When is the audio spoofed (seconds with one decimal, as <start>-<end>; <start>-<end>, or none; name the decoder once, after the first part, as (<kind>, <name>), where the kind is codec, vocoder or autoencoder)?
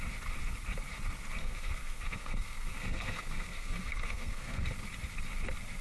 1.4-4.7 (codec, SNAC)